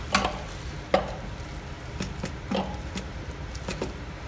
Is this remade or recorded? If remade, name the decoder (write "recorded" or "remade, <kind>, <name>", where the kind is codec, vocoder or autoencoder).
recorded